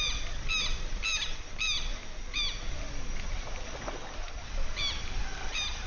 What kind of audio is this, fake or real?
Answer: real